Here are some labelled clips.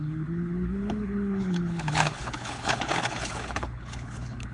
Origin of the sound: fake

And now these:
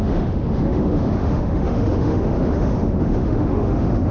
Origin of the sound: fake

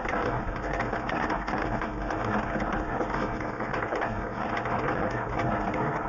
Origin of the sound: fake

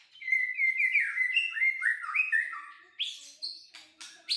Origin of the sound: real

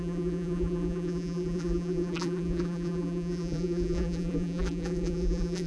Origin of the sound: fake